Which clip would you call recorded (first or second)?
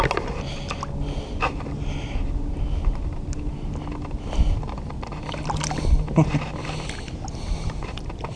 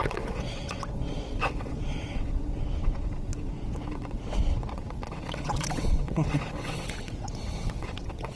first